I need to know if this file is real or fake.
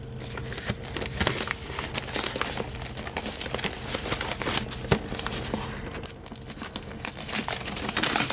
real